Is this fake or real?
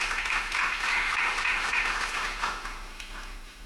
fake